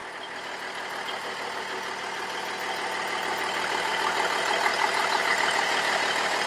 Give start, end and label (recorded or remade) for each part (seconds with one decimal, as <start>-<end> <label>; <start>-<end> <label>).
0.0-6.5 recorded